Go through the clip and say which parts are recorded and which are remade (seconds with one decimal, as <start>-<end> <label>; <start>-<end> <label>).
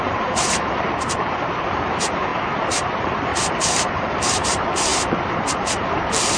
0.0-3.3 remade; 3.3-4.1 recorded; 4.1-6.4 remade